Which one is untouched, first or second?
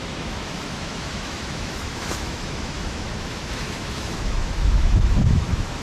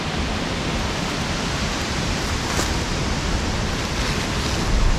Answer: second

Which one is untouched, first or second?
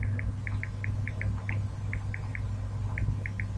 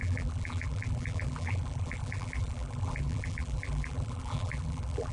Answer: first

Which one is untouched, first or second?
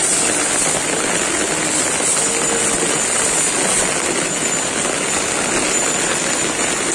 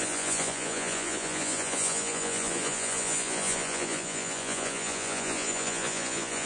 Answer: first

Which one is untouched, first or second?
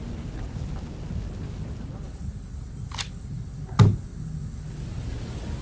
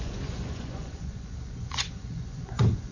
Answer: first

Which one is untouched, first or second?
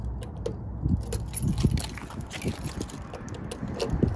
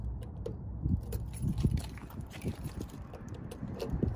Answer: first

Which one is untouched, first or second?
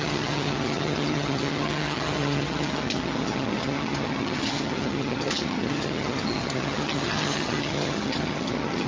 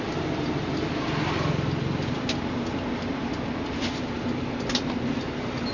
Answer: second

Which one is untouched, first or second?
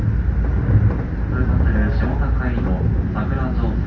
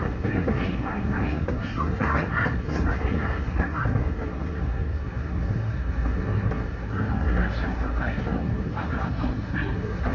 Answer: first